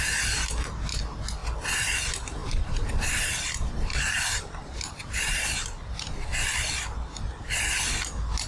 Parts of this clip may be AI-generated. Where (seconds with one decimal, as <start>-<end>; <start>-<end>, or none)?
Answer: 2.4-5.4